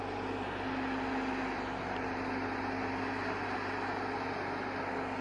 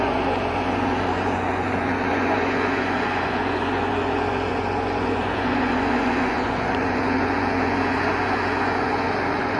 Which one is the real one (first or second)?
first